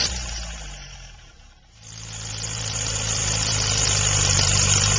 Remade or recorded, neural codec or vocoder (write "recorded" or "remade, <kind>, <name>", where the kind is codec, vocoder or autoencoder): remade, vocoder, BigVGAN v2